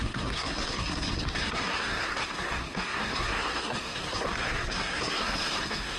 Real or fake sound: fake